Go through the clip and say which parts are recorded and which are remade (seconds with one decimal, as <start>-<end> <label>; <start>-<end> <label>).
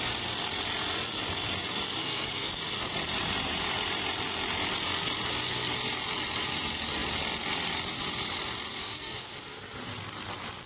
0.0-2.0 recorded; 2.0-2.5 remade; 2.5-8.8 recorded; 8.8-9.3 remade; 9.3-10.7 recorded